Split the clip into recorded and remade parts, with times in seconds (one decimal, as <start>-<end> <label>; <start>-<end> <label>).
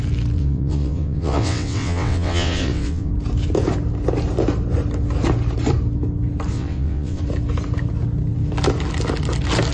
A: 0.0-0.4 recorded; 0.4-3.1 remade; 3.1-6.5 recorded; 6.5-7.2 remade; 7.2-9.7 recorded